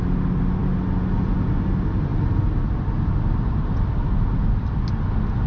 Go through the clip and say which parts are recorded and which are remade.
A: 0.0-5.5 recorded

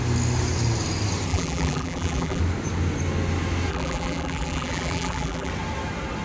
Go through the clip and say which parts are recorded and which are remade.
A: 0.0-1.3 recorded; 1.3-2.4 remade; 2.4-3.7 recorded; 3.7-5.5 remade; 5.5-6.2 recorded

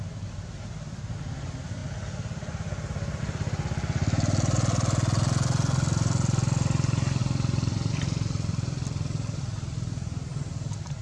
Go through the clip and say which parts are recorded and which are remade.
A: 0.0-11.0 recorded

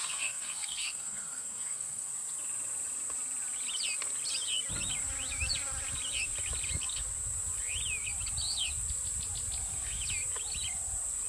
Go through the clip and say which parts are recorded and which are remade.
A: 0.0-2.1 remade; 2.1-11.3 recorded

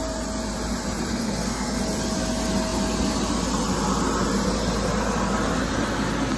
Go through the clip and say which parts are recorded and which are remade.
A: 0.0-1.1 recorded; 1.1-1.8 remade; 1.8-6.4 recorded

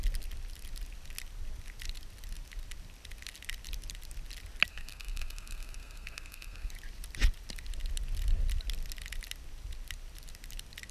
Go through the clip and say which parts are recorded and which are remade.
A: 0.0-4.7 recorded; 4.7-6.7 remade; 6.7-10.9 recorded

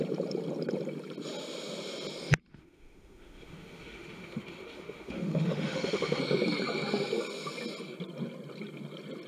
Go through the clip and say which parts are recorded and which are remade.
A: 0.0-2.5 recorded; 2.5-6.2 remade; 6.2-9.3 recorded